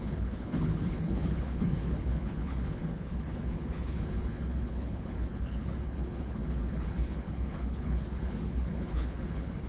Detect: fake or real fake